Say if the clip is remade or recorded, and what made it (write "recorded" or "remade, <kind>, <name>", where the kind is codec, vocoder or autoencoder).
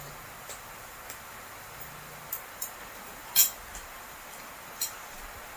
remade, vocoder, BigVGAN v2